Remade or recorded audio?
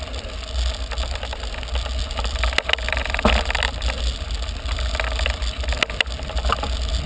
recorded